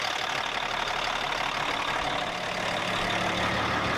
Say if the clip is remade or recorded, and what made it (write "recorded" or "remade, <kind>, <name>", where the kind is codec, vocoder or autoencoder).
recorded